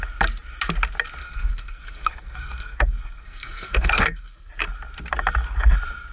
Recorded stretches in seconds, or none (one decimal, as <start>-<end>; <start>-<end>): 0.0-1.2; 4.5-6.1